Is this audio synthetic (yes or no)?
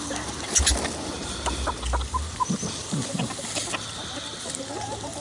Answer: no